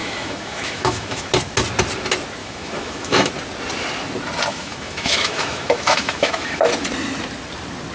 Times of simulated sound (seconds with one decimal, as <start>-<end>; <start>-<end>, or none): 0.0-1.3; 2.4-3.3; 4.5-6.7